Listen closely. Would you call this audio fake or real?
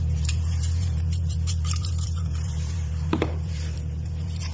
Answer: fake